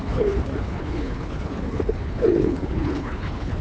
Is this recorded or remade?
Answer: remade